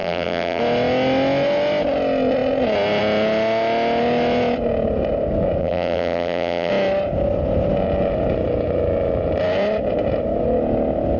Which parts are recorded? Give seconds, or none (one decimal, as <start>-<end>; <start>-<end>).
0.6-5.6; 6.7-11.2